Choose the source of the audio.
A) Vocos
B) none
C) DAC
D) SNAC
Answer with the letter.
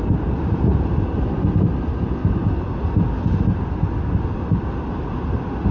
B